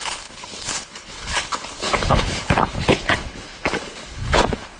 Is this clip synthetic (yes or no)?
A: yes